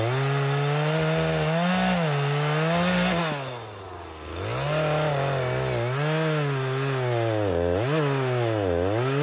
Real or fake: real